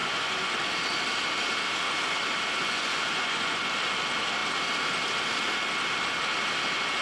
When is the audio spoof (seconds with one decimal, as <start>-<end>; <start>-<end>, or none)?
0.0-0.5; 2.6-3.6